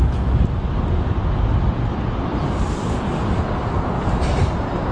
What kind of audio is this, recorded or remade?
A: recorded